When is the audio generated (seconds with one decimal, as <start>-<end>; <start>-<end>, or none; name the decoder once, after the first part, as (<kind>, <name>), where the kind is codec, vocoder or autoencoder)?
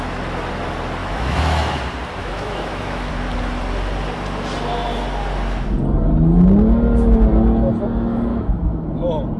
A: 1.0-1.8 (autoencoder, DAC-VAE); 2.2-3.1; 8.3-8.9